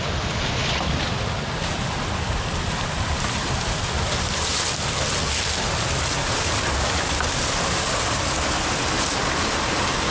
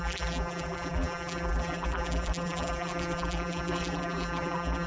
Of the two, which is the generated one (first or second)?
second